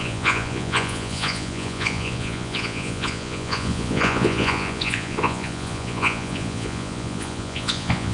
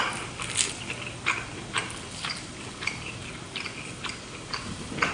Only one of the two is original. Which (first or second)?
second